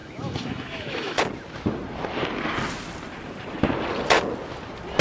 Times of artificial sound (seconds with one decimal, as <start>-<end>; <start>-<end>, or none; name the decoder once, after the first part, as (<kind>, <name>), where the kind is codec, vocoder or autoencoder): 0.0-1.2 (autoencoder, DAC-VAE)